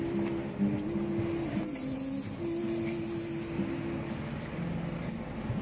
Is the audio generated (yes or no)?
no